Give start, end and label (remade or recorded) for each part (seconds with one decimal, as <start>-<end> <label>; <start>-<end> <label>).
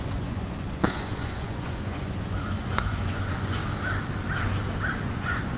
0.0-3.6 remade; 3.6-5.0 recorded; 5.0-5.6 remade